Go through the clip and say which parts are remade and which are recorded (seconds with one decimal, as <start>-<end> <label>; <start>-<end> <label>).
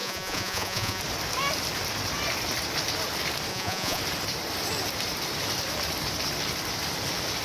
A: 0.0-1.0 remade; 1.0-3.5 recorded; 3.5-4.0 remade; 4.0-7.4 recorded